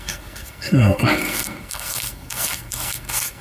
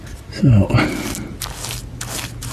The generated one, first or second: first